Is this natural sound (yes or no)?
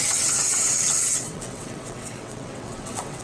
no